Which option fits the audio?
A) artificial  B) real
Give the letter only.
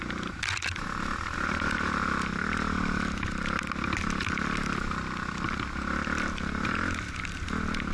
B